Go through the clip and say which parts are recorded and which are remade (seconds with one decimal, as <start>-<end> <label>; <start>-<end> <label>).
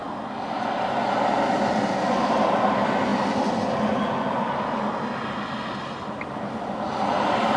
0.0-7.6 recorded